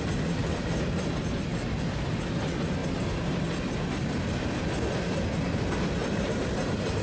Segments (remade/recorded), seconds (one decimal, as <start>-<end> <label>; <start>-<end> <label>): 0.0-0.4 recorded; 0.4-1.1 remade; 1.1-6.0 recorded; 6.0-7.0 remade